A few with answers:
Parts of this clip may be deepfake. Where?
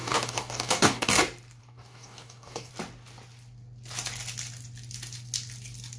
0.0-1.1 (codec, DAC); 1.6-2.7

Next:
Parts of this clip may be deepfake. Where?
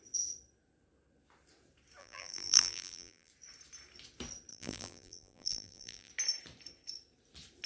2.0-3.3 (vocoder, BigVGAN v2); 4.5-6.1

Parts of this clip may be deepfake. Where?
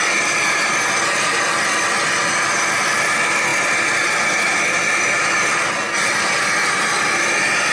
none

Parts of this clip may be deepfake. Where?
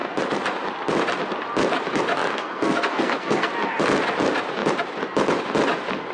2.3-3.5 (codec, SNAC)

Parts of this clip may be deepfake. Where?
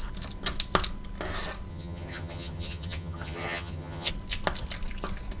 1.7-4.1 (vocoder, HiFi-GAN)